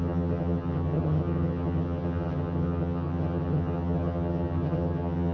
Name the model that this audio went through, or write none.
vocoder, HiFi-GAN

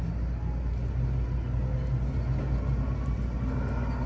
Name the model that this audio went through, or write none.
none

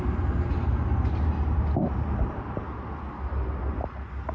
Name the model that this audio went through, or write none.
none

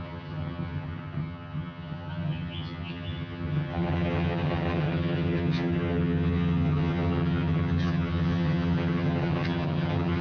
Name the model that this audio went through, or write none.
vocoder, HiFi-GAN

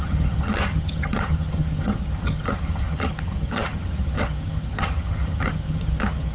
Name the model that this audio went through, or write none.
vocoder, HiFi-GAN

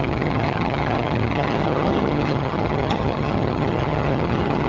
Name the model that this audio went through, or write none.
vocoder, HiFi-GAN